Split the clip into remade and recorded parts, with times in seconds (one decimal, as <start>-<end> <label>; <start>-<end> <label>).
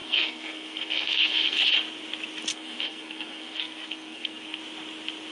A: 0.0-1.6 remade; 1.6-2.5 recorded; 2.5-4.6 remade; 4.6-5.3 recorded